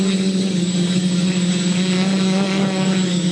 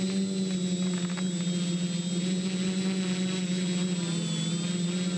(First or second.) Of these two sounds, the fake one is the first